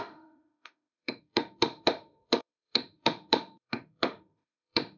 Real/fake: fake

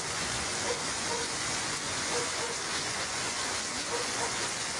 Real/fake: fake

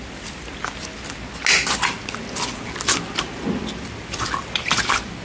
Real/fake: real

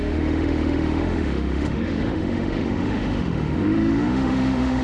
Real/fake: fake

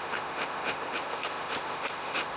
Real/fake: fake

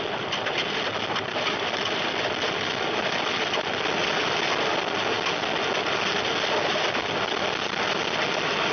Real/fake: real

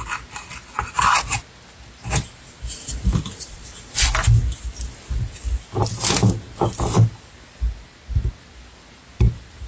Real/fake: real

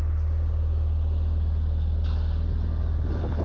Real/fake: real